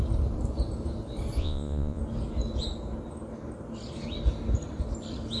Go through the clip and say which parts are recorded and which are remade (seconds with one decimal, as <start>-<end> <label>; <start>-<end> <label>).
0.0-1.4 recorded; 1.4-2.0 remade; 2.0-5.4 recorded

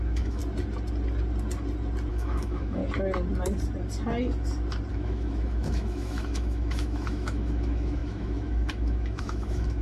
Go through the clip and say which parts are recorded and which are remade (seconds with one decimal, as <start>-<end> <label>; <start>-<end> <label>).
0.0-0.4 remade; 0.4-2.1 recorded; 2.1-2.8 remade; 2.8-4.9 recorded; 4.9-9.8 remade